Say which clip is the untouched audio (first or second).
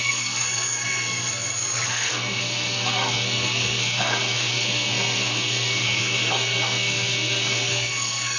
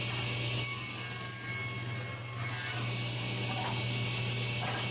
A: second